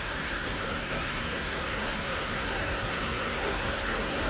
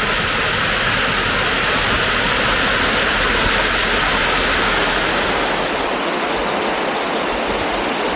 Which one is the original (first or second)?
second